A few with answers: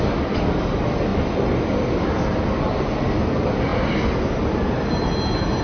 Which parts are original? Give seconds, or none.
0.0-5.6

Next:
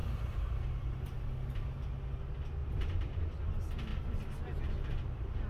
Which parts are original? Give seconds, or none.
0.5-2.6; 3.3-5.5

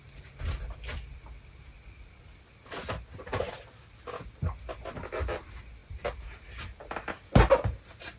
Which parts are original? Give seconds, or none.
0.0-8.2

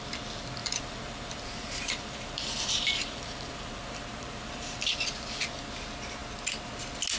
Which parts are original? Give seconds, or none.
0.0-0.6; 4.9-7.2

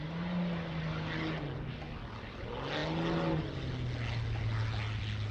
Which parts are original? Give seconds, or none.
0.0-5.3